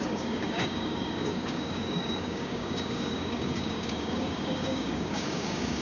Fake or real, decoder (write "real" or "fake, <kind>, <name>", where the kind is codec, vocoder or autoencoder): fake, codec, DAC